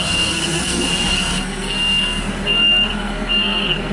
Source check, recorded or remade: remade